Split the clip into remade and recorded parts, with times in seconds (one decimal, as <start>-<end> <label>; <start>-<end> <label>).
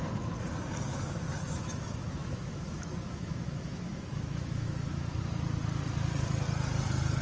0.0-0.9 recorded; 0.9-5.2 remade; 5.2-7.2 recorded